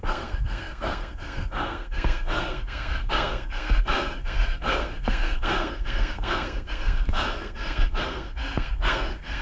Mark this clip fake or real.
fake